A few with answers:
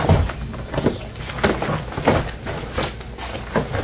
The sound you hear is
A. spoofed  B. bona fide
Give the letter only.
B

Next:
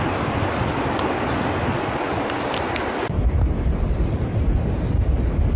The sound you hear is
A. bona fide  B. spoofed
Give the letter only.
A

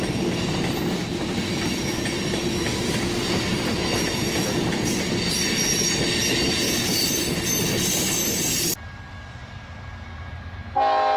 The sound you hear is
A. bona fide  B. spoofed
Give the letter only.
A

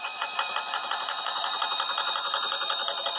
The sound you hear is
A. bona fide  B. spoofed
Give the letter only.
B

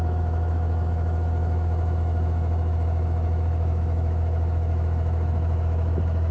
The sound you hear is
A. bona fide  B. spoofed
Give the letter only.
B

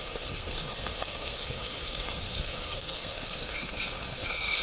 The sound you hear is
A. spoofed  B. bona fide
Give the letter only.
A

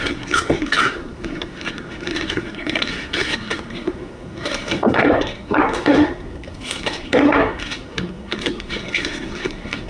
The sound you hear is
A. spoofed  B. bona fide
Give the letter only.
A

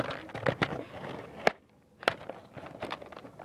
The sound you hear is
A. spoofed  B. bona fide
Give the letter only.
B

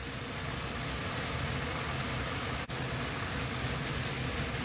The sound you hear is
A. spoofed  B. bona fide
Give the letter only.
B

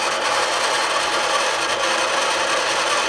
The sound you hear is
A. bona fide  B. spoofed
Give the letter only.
A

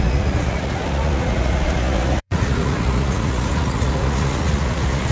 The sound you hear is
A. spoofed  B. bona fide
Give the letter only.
A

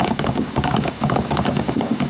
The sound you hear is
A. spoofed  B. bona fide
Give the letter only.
A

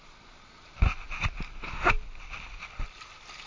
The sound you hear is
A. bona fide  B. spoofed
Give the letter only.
A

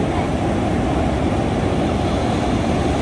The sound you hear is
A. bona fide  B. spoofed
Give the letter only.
A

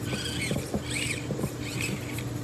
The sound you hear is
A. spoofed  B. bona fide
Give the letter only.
B